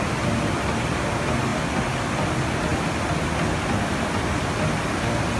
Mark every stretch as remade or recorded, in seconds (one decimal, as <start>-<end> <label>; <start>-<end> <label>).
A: 0.0-5.4 recorded